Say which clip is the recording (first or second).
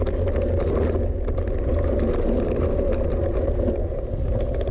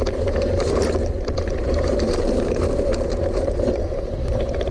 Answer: first